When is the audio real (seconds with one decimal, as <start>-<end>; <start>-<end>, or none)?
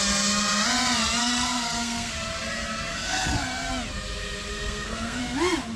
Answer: 0.0-1.2; 2.1-2.9; 3.7-4.5; 5.2-5.8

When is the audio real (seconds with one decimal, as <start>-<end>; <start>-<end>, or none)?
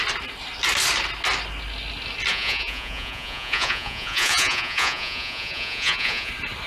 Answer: 0.0-2.3; 6.3-6.7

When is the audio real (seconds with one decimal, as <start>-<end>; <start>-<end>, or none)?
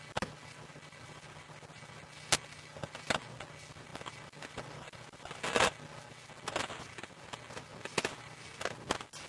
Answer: 0.0-9.3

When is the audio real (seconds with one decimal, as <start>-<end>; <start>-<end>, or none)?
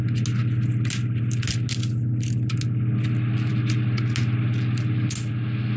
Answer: 0.0-5.8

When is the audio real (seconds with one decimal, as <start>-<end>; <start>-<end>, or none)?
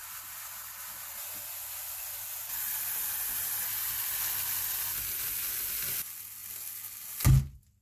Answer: 0.0-7.8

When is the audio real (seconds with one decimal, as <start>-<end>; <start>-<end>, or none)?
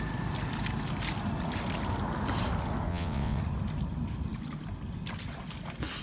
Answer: 0.0-2.9; 3.4-6.0